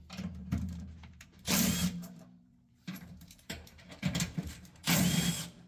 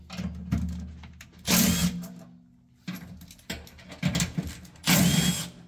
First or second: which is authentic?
second